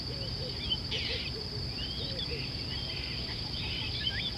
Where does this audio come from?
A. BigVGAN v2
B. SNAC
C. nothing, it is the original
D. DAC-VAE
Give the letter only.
A